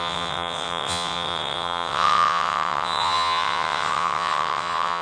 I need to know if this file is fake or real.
fake